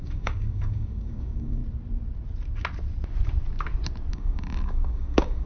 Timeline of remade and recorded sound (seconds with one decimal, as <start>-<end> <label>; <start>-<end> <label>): 0.0-1.6 remade; 1.6-4.1 recorded; 4.1-5.5 remade